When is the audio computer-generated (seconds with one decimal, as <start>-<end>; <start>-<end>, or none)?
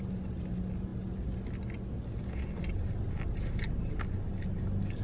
none